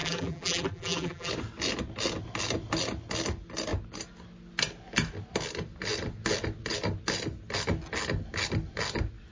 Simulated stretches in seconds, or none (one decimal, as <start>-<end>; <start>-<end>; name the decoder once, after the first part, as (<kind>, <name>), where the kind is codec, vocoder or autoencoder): 0.0-1.3 (vocoder, BigVGAN v2)